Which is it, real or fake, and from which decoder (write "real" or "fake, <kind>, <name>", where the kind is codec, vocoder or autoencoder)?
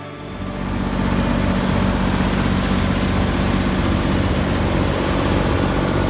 real